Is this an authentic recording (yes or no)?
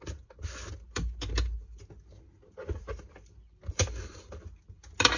yes